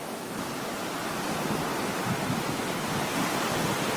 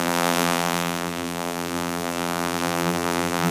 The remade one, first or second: second